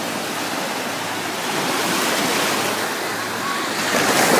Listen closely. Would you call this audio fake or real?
real